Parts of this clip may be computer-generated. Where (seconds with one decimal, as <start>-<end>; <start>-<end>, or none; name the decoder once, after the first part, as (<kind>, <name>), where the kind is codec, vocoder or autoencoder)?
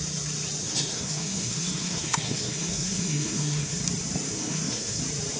0.6-3.8 (codec, SNAC); 4.3-5.0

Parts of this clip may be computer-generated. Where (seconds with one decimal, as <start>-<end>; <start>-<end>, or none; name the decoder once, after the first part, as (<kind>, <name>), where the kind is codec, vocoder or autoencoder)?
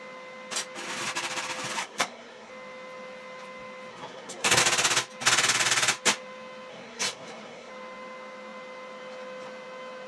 1.8-2.5 (codec, SNAC); 3.9-4.6; 6.7-7.7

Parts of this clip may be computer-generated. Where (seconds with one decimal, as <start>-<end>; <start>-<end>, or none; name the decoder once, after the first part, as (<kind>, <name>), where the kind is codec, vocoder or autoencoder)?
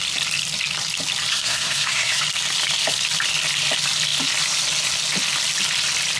1.3-2.2 (codec, SNAC)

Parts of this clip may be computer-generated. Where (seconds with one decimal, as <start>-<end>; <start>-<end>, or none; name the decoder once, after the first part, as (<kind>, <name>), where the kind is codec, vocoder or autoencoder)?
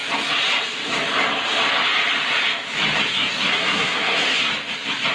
3.1-4.5 (codec, SNAC)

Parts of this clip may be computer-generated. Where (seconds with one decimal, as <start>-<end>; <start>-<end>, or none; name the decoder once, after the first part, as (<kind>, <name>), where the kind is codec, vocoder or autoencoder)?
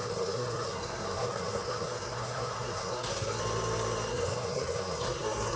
0.0-3.4 (codec, SNAC); 4.1-5.6